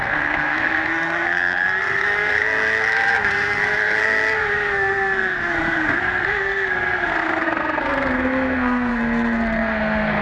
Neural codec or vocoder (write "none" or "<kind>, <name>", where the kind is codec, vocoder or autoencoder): codec, SNAC